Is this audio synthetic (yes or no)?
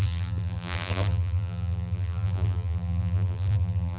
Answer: yes